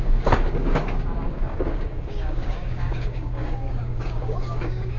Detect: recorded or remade remade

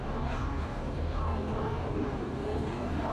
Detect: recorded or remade remade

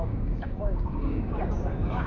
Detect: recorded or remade remade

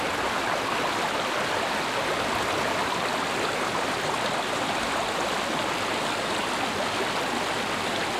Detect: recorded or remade recorded